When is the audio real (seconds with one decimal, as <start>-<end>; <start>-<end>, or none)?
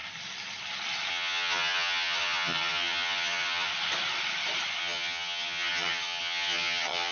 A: 0.0-1.1; 3.7-4.8